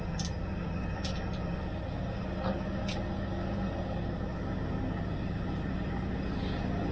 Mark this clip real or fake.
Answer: real